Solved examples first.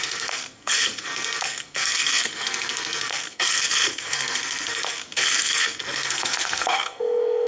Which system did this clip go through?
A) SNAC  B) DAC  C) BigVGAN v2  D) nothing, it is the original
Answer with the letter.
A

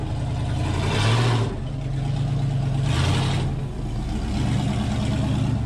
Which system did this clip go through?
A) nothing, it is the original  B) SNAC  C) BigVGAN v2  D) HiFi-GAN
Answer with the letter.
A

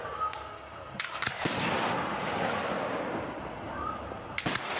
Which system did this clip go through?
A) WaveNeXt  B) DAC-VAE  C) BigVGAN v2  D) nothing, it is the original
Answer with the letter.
D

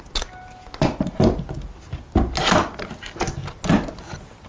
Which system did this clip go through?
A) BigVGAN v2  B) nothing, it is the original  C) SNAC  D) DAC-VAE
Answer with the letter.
B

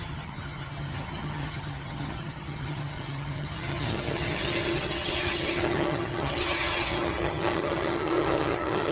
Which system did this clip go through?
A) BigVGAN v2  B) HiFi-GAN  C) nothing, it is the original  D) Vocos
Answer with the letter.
B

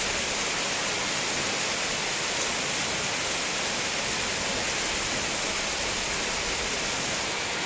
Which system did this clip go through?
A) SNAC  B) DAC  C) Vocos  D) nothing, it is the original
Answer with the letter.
D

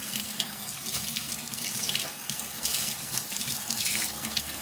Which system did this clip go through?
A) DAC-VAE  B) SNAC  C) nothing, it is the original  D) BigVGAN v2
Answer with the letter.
B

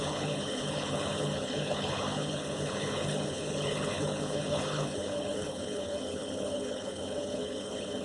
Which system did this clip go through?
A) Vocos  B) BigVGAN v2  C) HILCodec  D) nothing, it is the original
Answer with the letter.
C